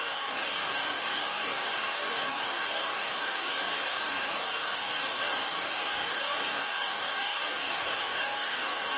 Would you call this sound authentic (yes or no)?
no